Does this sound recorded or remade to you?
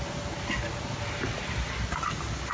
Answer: recorded